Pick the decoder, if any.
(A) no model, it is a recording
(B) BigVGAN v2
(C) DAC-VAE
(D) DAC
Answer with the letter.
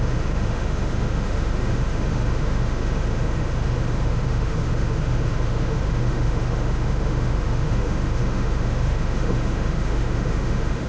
C